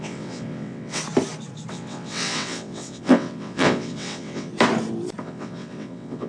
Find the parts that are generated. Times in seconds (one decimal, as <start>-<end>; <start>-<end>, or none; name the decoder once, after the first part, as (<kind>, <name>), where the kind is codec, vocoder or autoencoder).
0.0-1.0 (vocoder, WaveNeXt); 1.7-4.5; 5.2-6.3